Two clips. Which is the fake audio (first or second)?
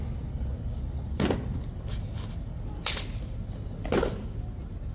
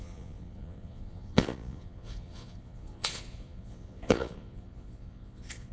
second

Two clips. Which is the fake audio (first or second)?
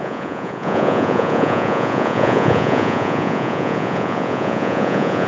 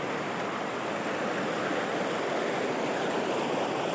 first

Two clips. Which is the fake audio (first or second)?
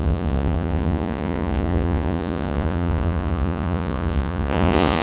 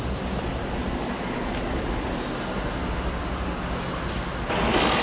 first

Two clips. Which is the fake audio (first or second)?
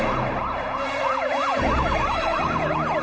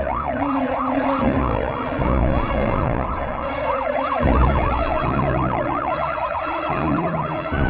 second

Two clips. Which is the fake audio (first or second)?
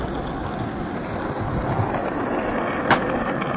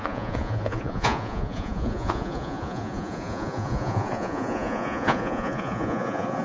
second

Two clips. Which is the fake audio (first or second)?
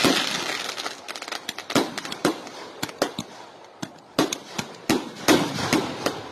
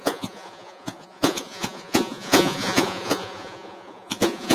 second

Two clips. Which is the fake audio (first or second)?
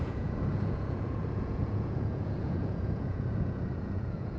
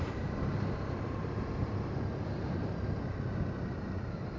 first